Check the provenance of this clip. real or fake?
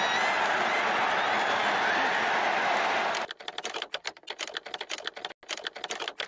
real